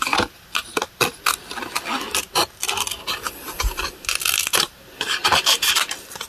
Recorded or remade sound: recorded